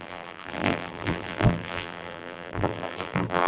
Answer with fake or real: fake